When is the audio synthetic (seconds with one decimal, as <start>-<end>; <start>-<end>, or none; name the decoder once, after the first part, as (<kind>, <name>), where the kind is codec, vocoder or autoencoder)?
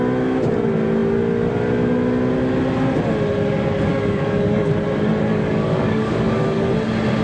3.9-4.7 (codec, DAC); 5.3-6.7